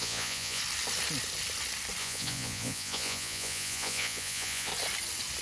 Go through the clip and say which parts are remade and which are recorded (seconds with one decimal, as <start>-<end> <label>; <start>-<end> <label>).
0.0-0.6 remade; 0.6-2.0 recorded; 2.0-4.7 remade; 4.7-5.4 recorded